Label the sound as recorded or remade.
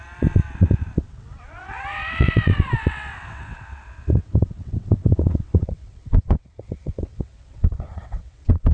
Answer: remade